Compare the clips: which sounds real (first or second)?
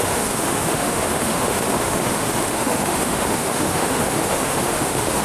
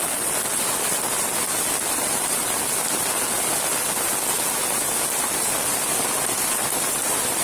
second